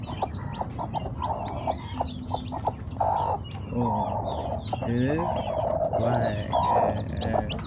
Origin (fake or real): real